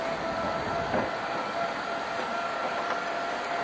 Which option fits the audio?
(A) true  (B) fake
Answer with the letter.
A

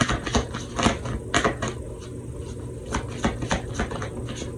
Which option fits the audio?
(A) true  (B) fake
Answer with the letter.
A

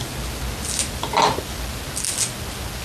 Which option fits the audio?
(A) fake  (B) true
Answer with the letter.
B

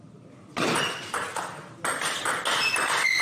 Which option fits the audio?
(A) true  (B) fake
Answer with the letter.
A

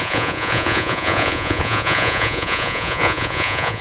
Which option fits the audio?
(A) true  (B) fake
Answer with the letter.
B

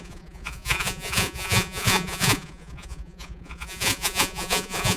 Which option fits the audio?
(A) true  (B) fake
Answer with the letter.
B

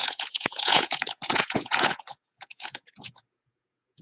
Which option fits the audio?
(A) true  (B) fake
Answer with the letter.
B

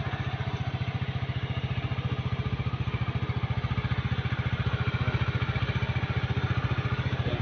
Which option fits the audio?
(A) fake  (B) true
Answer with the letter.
B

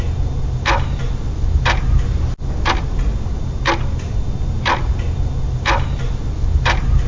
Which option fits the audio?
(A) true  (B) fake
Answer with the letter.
A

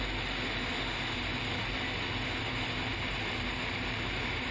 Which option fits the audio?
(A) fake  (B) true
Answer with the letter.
B